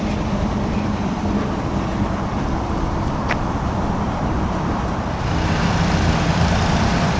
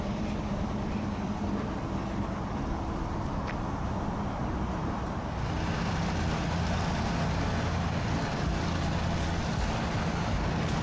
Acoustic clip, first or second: second